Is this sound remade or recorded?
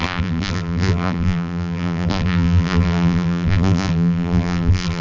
remade